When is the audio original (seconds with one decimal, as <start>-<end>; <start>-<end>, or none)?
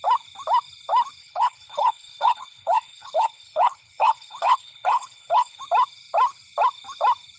0.0-1.2; 5.6-7.4